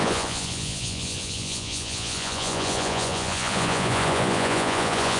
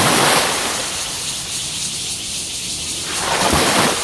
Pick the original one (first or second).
second